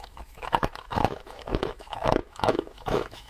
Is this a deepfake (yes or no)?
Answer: yes